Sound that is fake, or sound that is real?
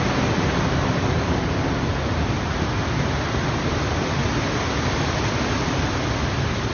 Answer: real